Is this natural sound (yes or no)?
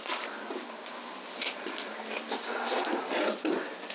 no